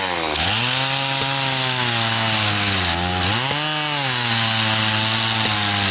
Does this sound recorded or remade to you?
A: recorded